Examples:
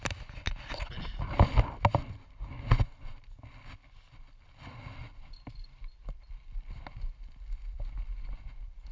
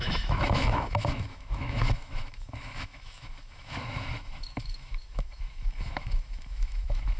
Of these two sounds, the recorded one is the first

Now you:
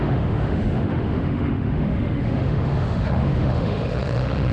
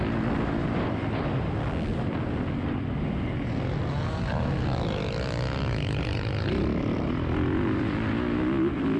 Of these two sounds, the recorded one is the second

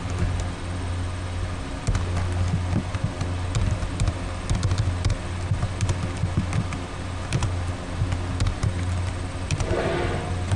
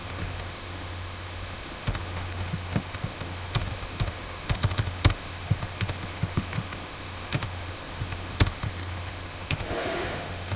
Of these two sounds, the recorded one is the first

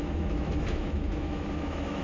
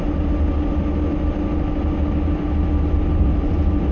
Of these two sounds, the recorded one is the second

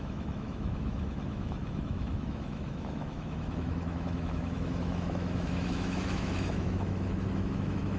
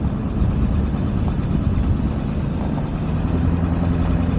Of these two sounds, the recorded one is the second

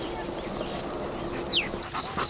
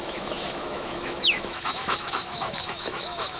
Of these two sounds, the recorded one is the first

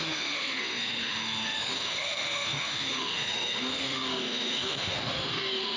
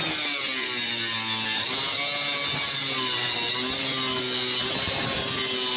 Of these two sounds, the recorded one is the second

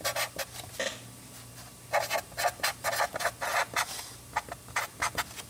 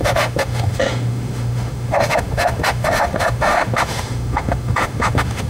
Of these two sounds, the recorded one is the first